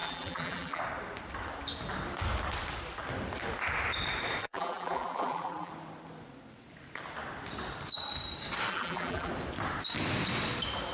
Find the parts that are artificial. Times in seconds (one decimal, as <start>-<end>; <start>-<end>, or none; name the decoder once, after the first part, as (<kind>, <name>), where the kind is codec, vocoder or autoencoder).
0.0-0.8 (vocoder, BigVGAN v2); 4.4-5.7; 8.7-9.3

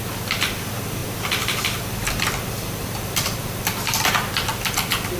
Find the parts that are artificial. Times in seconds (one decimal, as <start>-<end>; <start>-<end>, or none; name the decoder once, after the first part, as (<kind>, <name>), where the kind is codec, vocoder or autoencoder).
0.0-5.2 (vocoder, BigVGAN v2)

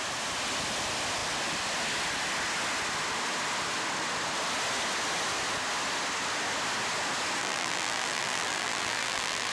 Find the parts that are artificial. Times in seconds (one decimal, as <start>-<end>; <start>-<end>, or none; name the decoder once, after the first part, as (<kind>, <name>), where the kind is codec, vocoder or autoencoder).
7.4-9.5 (vocoder, BigVGAN v2)

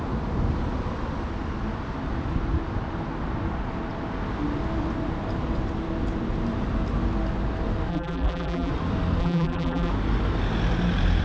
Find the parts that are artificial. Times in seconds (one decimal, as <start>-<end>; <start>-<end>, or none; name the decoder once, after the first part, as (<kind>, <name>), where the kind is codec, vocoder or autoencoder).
7.9-8.7 (vocoder, BigVGAN v2); 9.2-9.9

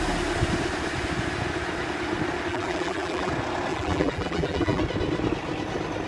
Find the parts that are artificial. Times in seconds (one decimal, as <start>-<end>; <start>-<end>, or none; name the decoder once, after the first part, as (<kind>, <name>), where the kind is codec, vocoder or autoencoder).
2.5-3.3 (vocoder, BigVGAN v2); 3.7-4.8

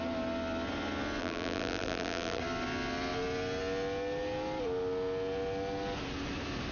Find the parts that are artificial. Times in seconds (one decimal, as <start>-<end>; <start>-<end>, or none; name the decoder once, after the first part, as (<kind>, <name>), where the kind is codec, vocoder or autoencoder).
1.2-2.4 (vocoder, BigVGAN v2)